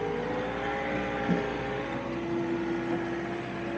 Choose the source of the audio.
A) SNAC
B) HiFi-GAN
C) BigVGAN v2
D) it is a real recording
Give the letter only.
D